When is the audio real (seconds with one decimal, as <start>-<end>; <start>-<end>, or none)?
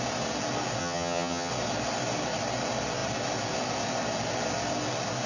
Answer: 0.0-0.8; 1.5-5.3